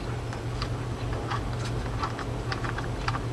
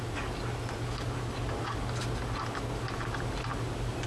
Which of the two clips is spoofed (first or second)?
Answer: first